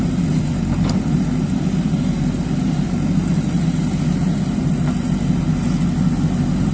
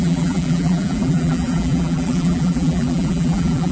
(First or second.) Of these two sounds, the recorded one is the first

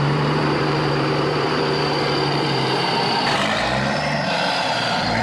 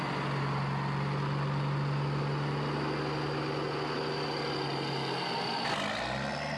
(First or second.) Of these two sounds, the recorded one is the second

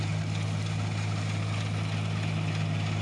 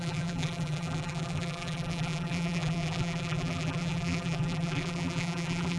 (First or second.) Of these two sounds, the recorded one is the first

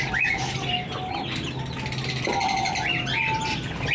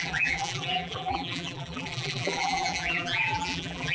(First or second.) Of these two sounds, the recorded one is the first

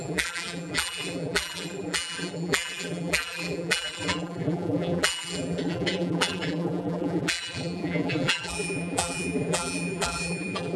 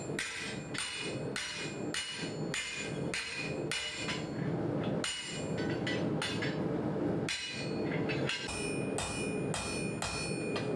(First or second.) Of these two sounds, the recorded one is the second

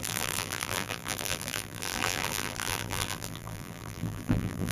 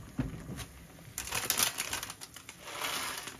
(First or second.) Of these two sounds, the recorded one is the second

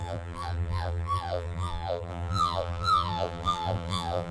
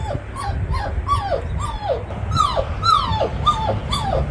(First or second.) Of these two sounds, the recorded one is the second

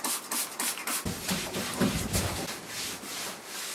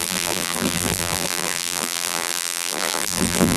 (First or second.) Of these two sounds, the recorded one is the first